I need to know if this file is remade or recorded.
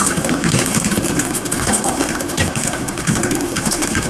remade